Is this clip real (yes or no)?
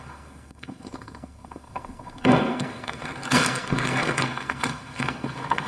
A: no